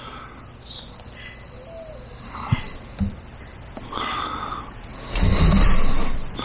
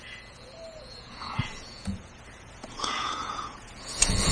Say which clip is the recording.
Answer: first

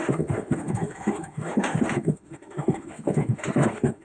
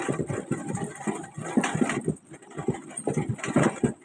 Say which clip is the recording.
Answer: second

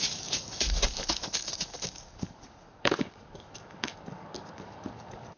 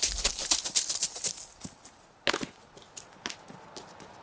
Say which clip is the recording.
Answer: second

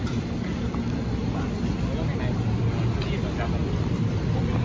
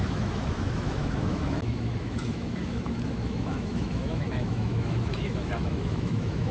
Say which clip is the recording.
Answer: first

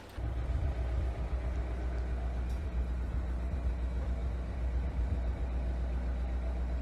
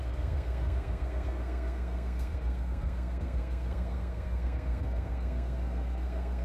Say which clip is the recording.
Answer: first